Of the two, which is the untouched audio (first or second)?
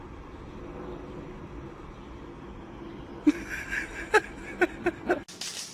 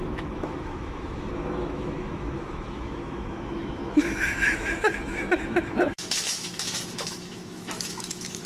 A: first